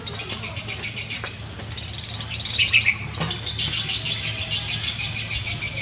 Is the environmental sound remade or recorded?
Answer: recorded